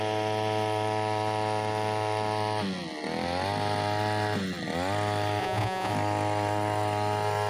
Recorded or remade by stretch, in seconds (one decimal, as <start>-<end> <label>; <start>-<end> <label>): 0.0-5.4 recorded; 5.4-5.9 remade; 5.9-7.5 recorded